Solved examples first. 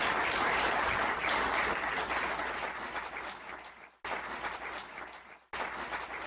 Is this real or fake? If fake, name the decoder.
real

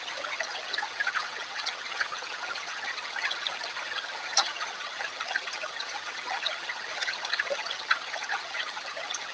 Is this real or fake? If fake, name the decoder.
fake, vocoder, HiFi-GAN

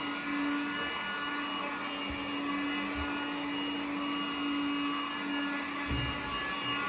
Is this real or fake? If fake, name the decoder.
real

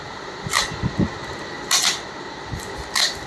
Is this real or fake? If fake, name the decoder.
real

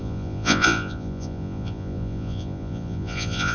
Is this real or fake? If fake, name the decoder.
fake, vocoder, Vocos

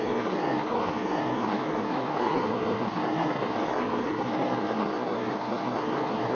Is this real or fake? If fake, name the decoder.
fake, codec, SNAC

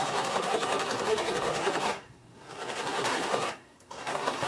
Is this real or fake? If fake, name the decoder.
fake, codec, SNAC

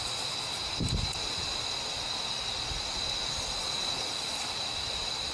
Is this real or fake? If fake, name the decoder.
real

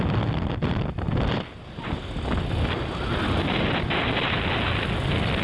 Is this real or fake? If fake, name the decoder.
real